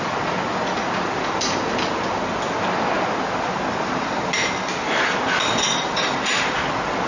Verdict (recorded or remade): recorded